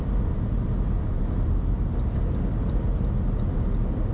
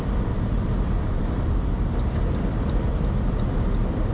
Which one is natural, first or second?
first